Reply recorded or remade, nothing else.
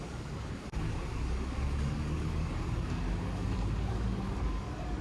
remade